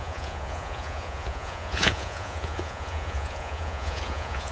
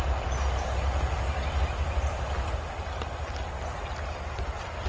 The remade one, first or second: first